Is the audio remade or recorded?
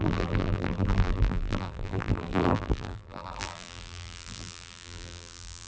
remade